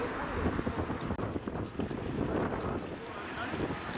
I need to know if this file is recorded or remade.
recorded